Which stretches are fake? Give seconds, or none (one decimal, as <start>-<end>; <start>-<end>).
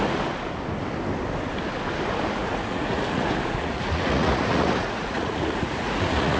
2.4-6.4